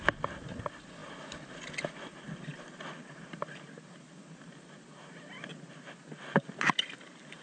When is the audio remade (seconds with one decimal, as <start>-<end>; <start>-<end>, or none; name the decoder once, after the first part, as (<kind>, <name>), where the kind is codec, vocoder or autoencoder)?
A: none